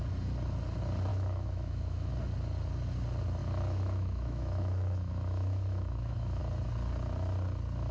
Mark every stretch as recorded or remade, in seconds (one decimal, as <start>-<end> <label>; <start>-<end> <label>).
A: 0.0-1.1 recorded; 1.1-2.1 remade; 2.1-3.4 recorded; 3.4-6.4 remade; 6.4-7.9 recorded